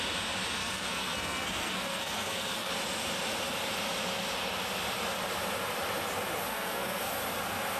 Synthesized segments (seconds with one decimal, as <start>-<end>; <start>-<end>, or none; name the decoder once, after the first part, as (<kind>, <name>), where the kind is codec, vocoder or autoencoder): 0.6-2.7 (codec, SNAC); 6.5-7.1